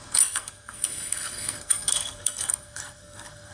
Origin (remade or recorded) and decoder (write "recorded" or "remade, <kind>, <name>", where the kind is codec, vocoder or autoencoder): remade, codec, SNAC